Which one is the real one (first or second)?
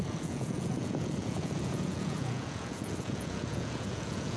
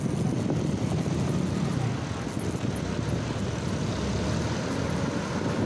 second